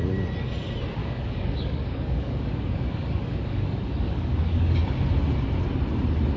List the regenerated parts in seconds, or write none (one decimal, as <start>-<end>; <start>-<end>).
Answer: 1.0-4.8